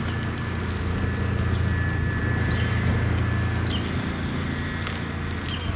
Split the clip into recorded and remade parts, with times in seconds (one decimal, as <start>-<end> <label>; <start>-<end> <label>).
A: 0.0-5.8 recorded